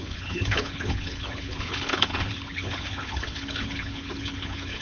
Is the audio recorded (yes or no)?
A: no